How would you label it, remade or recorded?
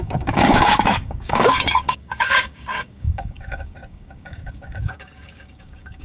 remade